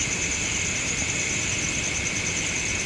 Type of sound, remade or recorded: recorded